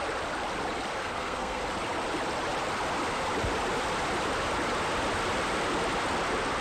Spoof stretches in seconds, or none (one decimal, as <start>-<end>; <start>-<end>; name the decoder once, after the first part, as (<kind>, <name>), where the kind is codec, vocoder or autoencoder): 1.0-1.6 (codec, SNAC)